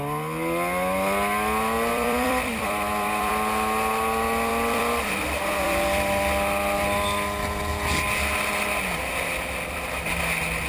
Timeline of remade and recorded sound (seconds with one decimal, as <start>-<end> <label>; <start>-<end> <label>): 0.0-1.9 recorded; 1.9-3.3 remade; 3.3-4.5 recorded; 4.5-6.0 remade; 6.0-10.7 recorded